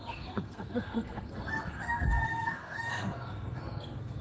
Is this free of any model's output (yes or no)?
no